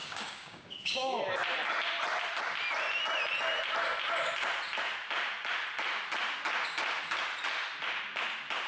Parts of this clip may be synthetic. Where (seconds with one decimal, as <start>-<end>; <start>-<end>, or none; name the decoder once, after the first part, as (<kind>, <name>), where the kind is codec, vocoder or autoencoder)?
0.0-1.2 (codec, DAC)